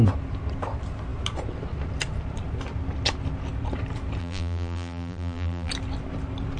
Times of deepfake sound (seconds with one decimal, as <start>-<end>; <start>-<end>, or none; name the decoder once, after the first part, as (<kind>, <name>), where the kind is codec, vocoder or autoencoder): 4.2-5.7 (vocoder, BigVGAN v2)